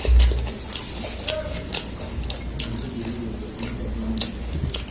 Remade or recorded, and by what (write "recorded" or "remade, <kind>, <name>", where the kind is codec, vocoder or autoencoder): recorded